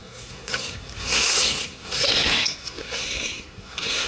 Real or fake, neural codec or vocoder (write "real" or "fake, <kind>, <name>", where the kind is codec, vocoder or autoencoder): fake, codec, SNAC